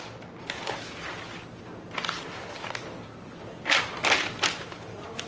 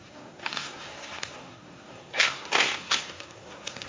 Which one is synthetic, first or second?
second